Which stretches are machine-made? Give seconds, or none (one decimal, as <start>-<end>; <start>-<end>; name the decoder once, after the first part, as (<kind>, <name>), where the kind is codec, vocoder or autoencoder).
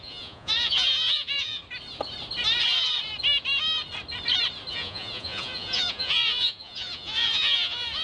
0.0-1.6 (vocoder, Vocos); 4.7-8.0